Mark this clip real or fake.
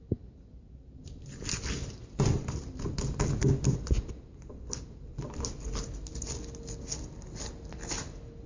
real